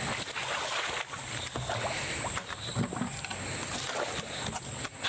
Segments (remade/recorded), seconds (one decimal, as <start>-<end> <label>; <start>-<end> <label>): 0.0-5.1 recorded